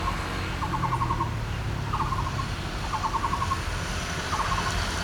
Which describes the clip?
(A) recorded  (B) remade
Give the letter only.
A